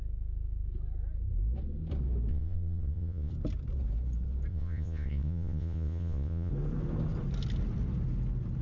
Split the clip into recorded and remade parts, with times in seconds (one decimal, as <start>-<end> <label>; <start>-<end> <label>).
0.0-2.3 recorded; 2.3-3.3 remade; 3.3-4.5 recorded; 4.5-6.5 remade; 6.5-8.6 recorded

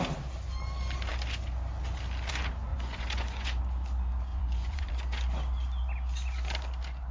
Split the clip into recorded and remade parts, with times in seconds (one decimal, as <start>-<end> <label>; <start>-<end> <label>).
0.0-2.7 recorded; 2.7-3.6 remade; 3.6-4.3 recorded; 4.3-4.9 remade; 4.9-7.1 recorded